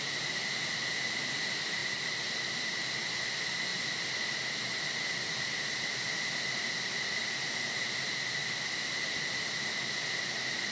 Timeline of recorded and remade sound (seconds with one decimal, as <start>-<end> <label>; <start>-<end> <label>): 0.0-1.8 recorded; 1.8-3.0 remade; 3.0-3.7 recorded; 3.7-7.5 remade; 7.5-8.4 recorded; 8.4-9.1 remade; 9.1-10.7 recorded